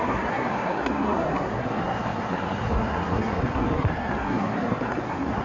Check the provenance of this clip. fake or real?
fake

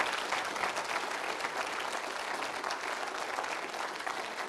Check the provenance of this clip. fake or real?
real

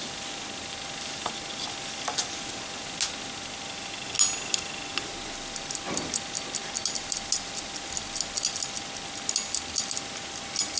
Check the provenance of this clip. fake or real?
real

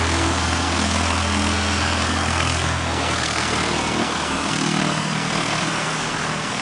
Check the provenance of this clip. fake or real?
fake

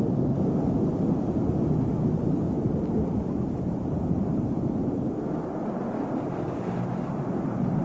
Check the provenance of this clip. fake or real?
real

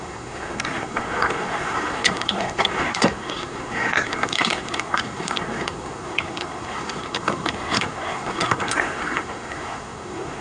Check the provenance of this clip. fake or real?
fake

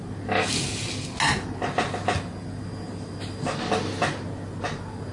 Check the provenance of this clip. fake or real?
real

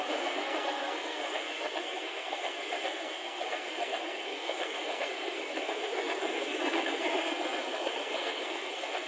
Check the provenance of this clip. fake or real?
fake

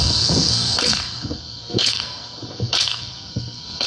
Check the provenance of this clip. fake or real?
fake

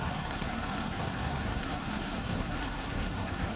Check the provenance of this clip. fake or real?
fake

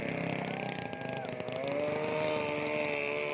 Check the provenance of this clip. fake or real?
real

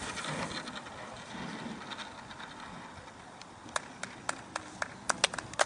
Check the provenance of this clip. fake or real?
real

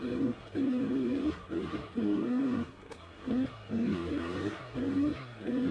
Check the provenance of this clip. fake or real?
fake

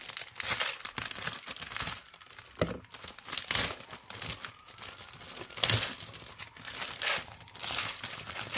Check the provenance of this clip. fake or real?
real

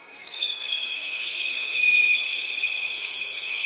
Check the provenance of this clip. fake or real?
fake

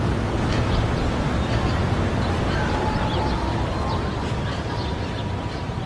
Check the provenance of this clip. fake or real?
real